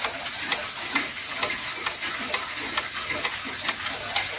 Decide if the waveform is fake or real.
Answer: real